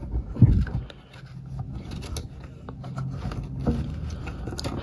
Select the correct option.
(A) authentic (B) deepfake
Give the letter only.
A